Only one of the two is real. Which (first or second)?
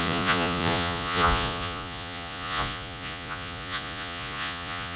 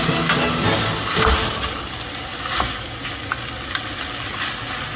second